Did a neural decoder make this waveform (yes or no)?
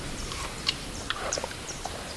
yes